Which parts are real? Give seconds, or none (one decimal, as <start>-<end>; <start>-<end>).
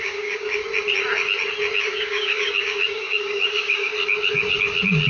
0.6-1.8; 3.9-5.1